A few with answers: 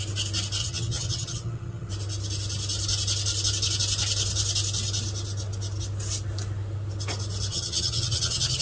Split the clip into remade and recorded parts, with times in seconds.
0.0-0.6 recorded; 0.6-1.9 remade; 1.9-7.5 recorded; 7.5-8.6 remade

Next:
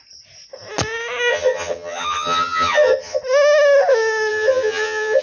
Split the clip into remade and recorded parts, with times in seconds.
0.0-1.3 recorded; 1.3-3.2 remade; 3.2-4.3 recorded; 4.3-5.2 remade

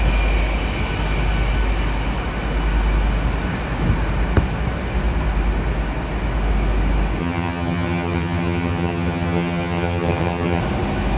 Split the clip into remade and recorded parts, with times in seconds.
0.0-7.2 recorded; 7.2-10.6 remade; 10.6-11.2 recorded

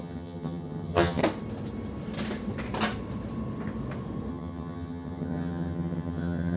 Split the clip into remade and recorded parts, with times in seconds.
0.0-1.2 remade; 1.2-4.3 recorded; 4.3-6.6 remade

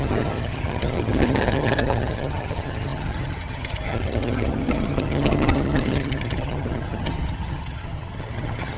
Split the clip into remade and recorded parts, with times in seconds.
0.0-8.8 remade

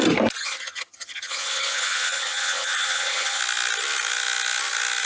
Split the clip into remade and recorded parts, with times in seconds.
0.0-0.4 recorded; 0.4-3.4 remade; 3.4-5.0 recorded

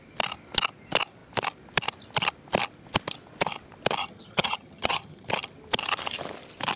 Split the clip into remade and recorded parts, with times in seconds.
0.0-4.0 recorded; 4.0-5.3 remade; 5.3-6.8 recorded

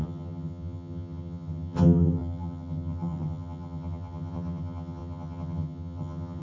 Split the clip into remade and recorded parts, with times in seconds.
0.0-6.4 remade